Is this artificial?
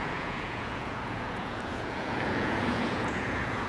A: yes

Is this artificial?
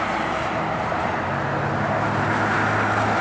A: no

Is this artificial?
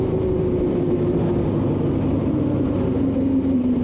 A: no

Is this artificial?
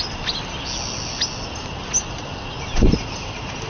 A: no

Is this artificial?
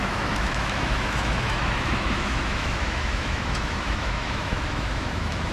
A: yes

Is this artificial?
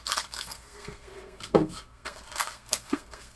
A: yes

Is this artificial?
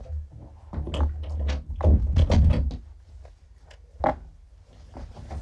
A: no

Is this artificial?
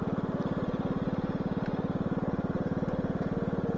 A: no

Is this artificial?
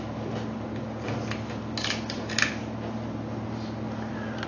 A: no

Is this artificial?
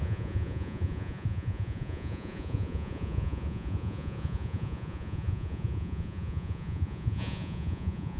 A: yes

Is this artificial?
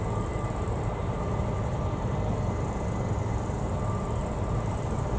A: yes